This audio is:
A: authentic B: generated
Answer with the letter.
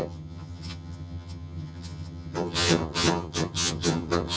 B